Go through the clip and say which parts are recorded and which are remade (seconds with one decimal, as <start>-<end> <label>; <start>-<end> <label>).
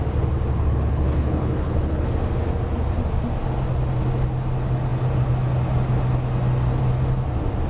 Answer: 0.0-0.5 recorded; 0.5-2.1 remade; 2.1-7.7 recorded